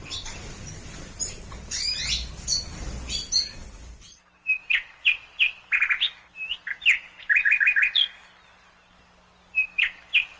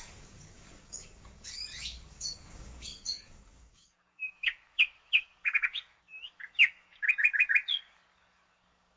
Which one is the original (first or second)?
first